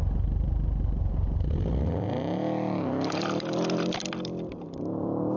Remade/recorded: remade